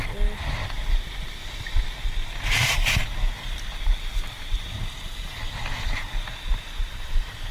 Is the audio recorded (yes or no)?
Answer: yes